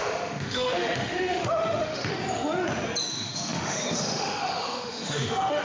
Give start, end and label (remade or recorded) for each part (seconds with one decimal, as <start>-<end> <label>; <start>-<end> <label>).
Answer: 0.0-2.1 remade; 2.1-3.0 recorded; 3.0-5.6 remade

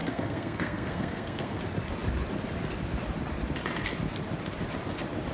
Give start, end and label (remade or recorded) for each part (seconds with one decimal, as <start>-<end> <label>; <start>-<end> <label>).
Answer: 0.0-1.6 remade; 1.6-5.3 recorded

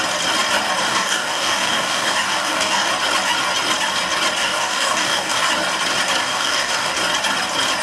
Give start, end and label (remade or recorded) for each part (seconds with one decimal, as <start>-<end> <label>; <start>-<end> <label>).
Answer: 0.0-0.8 recorded; 0.8-2.9 remade; 2.9-4.4 recorded; 4.4-5.5 remade; 5.5-6.2 recorded; 6.2-6.9 remade; 6.9-7.8 recorded

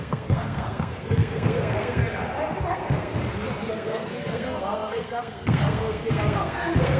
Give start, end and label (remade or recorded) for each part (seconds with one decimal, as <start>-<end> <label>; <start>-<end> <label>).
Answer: 0.0-2.0 remade; 2.0-2.6 recorded; 2.6-3.2 remade; 3.2-3.7 recorded; 3.7-7.0 remade

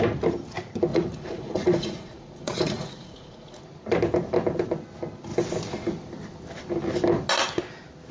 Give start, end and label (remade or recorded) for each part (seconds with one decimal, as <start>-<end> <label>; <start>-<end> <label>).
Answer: 0.0-0.9 recorded; 0.9-3.6 remade; 3.6-8.1 recorded

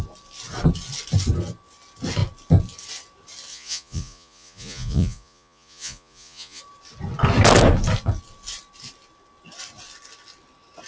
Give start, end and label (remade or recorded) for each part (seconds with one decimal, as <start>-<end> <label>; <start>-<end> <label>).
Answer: 0.0-3.5 recorded; 3.5-6.6 remade; 6.6-10.9 recorded

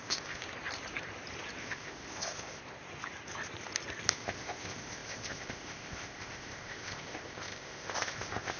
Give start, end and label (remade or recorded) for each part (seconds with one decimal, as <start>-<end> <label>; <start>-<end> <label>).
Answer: 0.0-0.4 remade; 0.4-1.6 recorded; 1.6-2.6 remade; 2.6-4.1 recorded; 4.1-8.6 remade